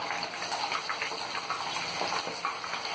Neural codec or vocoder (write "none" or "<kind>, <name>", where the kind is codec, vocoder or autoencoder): none